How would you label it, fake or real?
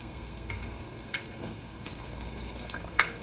fake